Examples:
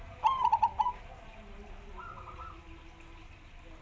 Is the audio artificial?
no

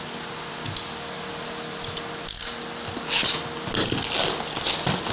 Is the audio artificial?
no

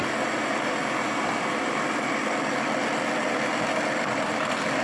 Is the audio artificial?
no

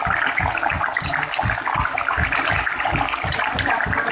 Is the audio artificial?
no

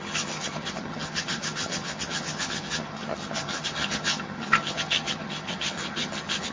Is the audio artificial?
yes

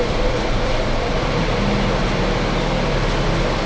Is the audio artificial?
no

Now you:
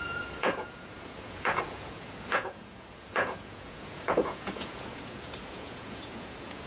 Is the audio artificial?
yes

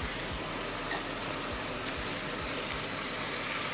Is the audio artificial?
no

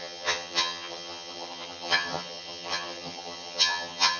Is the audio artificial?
yes